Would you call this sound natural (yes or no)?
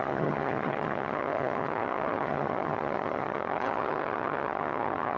no